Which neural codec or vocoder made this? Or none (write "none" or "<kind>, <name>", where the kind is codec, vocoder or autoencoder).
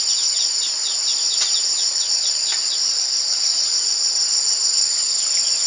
none